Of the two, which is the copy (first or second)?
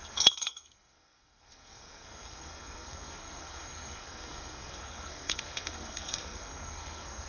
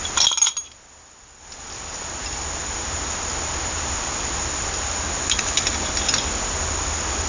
first